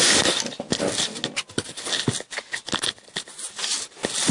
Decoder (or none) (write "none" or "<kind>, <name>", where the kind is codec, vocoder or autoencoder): none